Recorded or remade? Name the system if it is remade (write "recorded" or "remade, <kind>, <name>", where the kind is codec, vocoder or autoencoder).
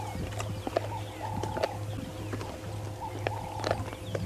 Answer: recorded